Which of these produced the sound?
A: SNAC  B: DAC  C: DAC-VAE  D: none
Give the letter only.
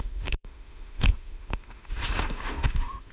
C